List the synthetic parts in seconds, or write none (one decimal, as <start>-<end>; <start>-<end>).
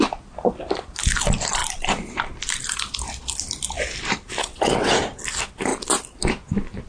4.4-4.9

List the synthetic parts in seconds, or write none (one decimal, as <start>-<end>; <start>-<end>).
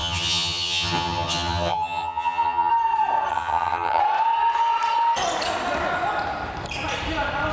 0.0-2.7; 3.3-4.0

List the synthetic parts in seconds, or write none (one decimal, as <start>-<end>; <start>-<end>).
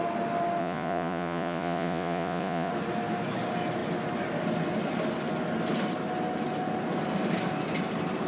0.6-2.7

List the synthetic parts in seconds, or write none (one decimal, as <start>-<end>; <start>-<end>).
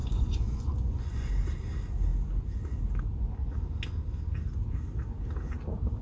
0.0-1.3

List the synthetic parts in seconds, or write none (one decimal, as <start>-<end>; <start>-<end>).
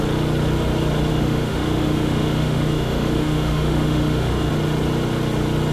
1.1-4.5